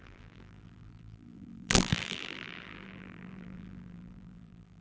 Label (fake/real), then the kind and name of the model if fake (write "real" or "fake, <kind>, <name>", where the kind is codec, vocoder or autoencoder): fake, vocoder, BigVGAN v2